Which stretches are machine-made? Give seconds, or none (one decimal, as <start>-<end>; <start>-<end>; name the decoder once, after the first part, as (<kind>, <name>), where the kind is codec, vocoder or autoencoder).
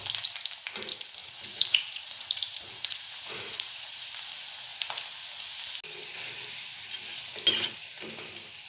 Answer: 1.2-4.1 (vocoder, Vocos)